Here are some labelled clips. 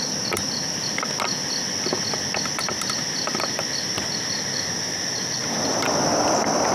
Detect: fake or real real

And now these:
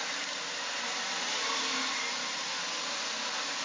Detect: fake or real real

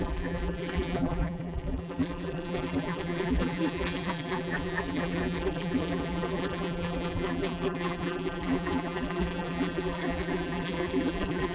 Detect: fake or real fake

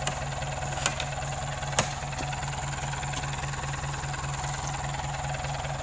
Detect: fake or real real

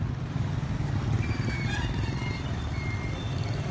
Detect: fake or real real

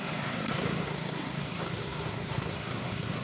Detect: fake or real fake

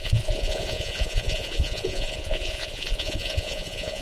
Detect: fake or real fake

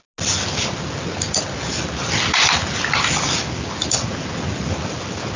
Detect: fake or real real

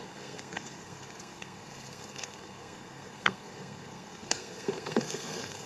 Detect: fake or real fake